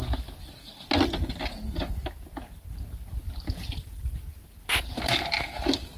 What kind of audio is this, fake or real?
real